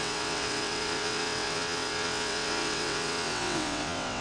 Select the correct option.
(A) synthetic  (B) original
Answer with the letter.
A